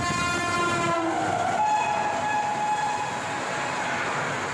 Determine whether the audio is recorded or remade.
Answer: recorded